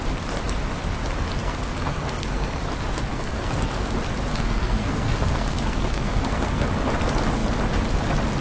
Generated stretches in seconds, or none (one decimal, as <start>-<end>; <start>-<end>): 1.4-2.6; 3.1-3.9; 4.3-6.8